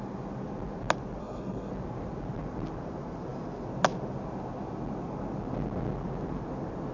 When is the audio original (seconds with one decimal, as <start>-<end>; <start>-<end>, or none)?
0.0-1.2; 1.7-6.9